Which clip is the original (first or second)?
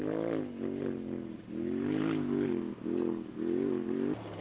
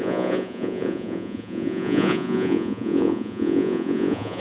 first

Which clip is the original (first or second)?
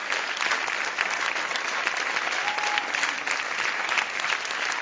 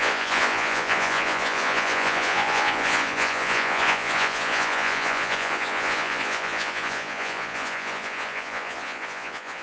first